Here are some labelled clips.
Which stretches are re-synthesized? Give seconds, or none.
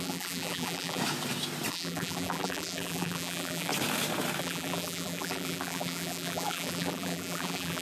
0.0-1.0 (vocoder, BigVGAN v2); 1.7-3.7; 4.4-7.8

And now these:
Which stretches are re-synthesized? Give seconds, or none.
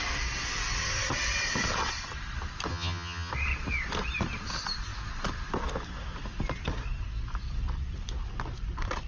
2.7-3.3 (vocoder, HiFi-GAN)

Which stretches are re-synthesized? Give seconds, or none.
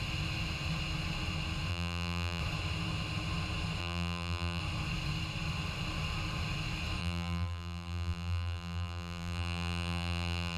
1.7-2.4 (vocoder, BigVGAN v2); 3.8-4.6; 7.0-10.6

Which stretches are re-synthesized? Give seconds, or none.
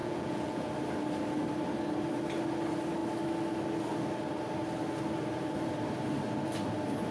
0.0-0.7 (vocoder, Vocos)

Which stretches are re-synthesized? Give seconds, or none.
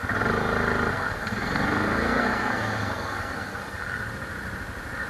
0.9-4.0 (codec, SNAC)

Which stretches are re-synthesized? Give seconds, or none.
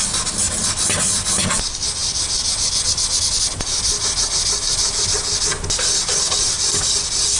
none